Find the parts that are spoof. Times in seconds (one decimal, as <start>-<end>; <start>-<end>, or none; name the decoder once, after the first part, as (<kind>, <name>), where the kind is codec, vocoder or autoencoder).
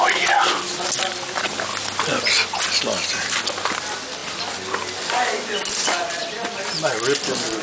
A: none